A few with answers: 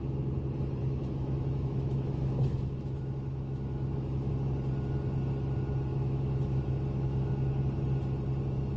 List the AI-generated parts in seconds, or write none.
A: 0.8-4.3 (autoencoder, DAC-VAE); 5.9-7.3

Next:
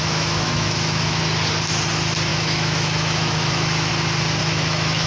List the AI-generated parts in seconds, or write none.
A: 0.0-1.2 (autoencoder, DAC-VAE); 2.3-3.9; 4.4-5.1

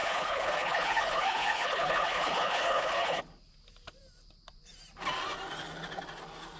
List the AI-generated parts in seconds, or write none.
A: 0.0-3.2 (codec, HILCodec)

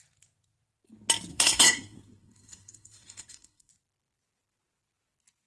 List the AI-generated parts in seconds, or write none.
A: 1.3-3.7 (codec, SNAC)

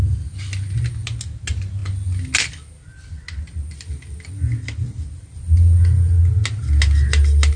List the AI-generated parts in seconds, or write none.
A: none